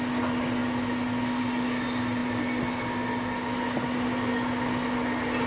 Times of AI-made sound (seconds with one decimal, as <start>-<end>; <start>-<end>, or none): none